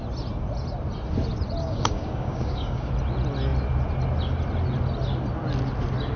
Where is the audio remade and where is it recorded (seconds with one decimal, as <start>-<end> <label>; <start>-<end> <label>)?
0.0-1.6 recorded; 1.6-2.9 remade; 2.9-6.2 recorded